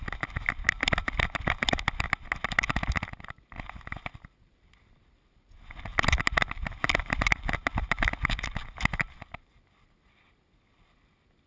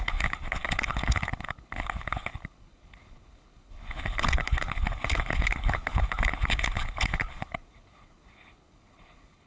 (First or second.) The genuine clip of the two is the first